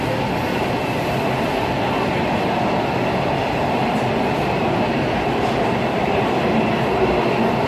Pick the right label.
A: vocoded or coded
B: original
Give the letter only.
B